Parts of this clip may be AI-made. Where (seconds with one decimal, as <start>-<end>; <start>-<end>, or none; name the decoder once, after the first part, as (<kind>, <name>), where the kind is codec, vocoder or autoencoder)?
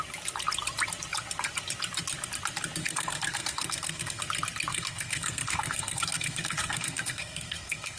2.8-4.2 (codec, SNAC); 4.7-8.0